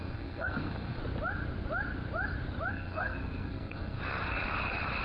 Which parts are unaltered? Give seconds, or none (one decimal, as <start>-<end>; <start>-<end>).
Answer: 1.0-2.7; 4.0-5.0